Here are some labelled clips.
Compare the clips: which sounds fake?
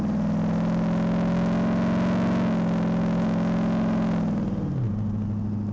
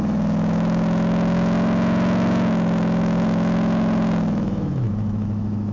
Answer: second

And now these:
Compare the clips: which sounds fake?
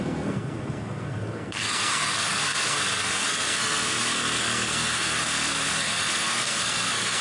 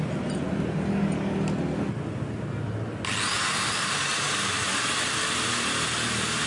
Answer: first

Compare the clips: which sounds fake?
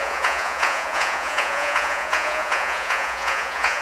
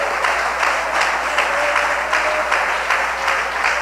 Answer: first